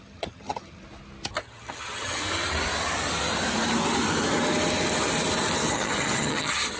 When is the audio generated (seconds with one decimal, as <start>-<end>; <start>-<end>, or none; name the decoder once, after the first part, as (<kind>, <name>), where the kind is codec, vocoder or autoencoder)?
0.0-0.8 (vocoder, HiFi-GAN); 1.4-2.2; 5.7-6.8